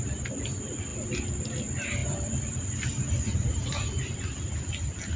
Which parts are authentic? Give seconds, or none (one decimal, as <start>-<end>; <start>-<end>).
0.0-5.2

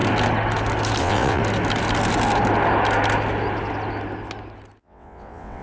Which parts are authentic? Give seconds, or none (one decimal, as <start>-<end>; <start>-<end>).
0.0-1.0; 1.4-4.8

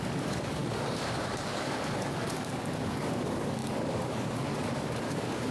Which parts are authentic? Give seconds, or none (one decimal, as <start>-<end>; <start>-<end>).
none

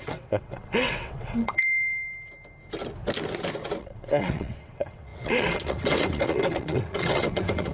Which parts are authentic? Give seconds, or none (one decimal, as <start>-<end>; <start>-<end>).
1.6-3.8

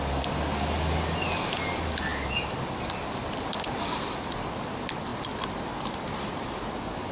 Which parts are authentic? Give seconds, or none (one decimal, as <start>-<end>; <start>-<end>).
0.0-7.1

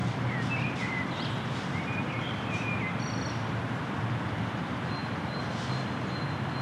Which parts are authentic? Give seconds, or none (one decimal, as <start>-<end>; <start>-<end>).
none

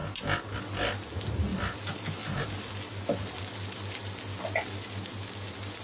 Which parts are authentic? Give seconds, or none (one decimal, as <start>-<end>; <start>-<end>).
0.0-5.8